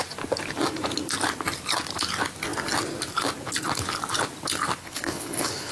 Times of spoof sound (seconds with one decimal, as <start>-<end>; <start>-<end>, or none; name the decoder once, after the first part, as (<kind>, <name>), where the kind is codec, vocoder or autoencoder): 4.8-5.7 (codec, HILCodec)